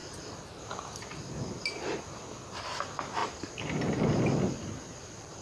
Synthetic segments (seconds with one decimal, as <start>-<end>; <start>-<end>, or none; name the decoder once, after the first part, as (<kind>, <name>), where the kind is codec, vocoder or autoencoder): none